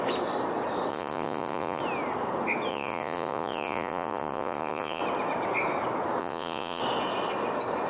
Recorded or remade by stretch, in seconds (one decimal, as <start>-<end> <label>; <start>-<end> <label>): 0.0-0.9 recorded; 0.9-1.8 remade; 1.8-2.7 recorded; 2.7-5.0 remade; 5.0-6.2 recorded; 6.2-6.8 remade; 6.8-7.9 recorded